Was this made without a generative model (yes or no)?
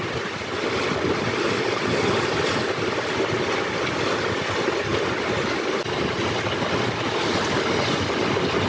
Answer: yes